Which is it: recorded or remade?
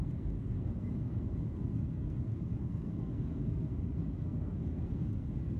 remade